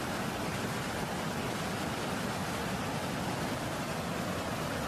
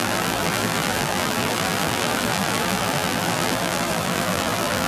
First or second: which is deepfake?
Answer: second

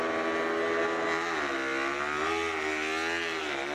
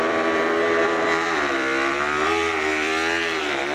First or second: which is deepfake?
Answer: second